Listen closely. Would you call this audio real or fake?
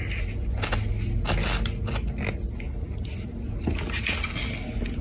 real